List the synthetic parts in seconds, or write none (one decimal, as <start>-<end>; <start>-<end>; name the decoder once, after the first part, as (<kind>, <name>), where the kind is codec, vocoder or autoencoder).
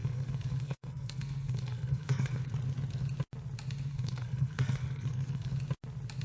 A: 0.0-2.4 (codec, SNAC); 3.9-5.5